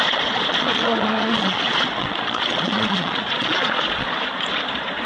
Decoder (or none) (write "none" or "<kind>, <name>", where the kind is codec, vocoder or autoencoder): vocoder, Vocos